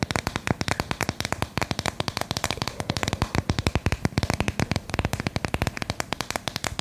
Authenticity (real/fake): real